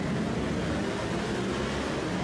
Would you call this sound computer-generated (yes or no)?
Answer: no